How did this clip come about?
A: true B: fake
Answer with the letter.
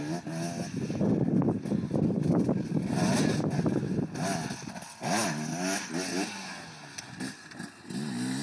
A